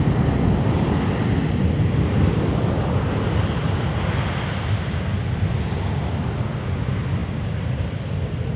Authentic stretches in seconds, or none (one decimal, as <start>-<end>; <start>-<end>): 0.0-8.6